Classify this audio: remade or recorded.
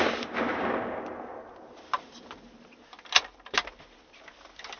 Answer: recorded